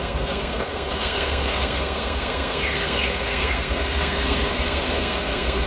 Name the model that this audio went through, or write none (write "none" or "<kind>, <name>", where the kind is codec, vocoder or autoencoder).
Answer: codec, SNAC